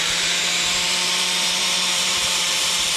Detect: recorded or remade remade